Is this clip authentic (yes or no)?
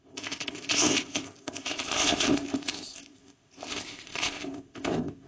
no